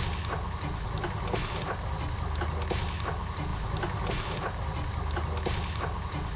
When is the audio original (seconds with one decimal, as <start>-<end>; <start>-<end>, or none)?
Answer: 0.0-6.4